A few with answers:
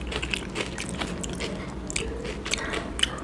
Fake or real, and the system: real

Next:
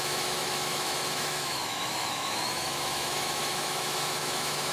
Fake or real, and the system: fake, autoencoder, DAC-VAE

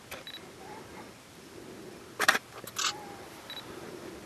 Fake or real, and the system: real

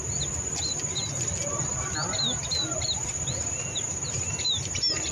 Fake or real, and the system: real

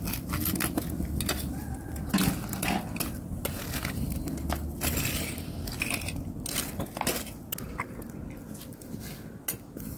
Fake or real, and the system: real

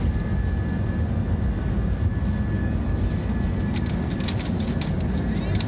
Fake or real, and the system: real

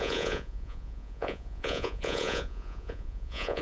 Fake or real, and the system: fake, vocoder, Vocos